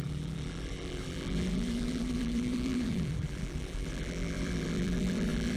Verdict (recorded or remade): remade